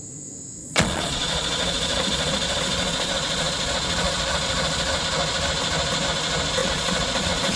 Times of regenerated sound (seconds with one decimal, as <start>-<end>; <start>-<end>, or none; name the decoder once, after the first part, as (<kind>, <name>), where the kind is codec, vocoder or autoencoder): 0.6-5.0 (vocoder, Vocos); 6.6-7.6